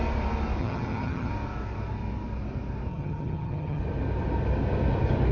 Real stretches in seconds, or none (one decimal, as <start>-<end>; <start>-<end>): 0.0-0.6; 1.3-2.9; 3.8-5.3